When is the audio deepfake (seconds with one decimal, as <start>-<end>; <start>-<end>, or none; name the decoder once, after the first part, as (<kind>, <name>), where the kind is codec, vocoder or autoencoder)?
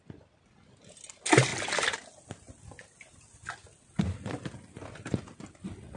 none